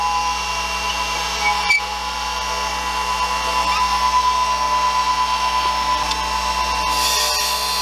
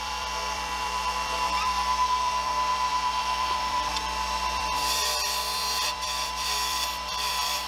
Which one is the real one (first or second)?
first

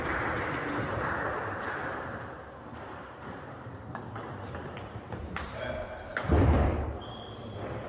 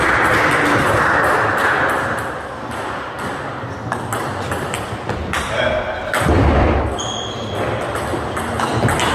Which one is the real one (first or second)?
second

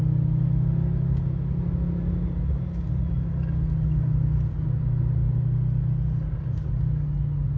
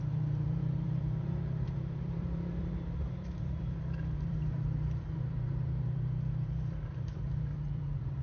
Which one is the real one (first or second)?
first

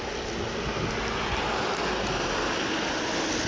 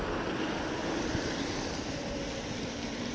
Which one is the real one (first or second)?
first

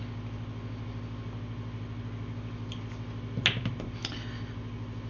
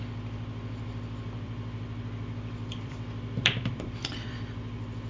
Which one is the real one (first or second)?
first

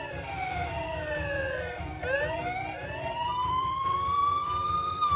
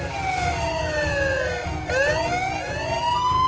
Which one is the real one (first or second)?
second